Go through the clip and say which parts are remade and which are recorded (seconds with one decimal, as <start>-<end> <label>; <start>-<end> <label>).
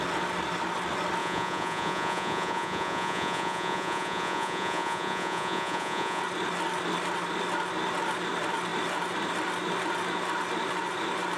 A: 0.0-1.2 recorded; 1.2-6.2 remade; 6.2-11.4 recorded